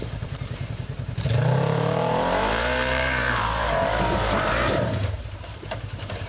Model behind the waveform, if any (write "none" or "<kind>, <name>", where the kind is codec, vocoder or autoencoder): vocoder, BigVGAN v2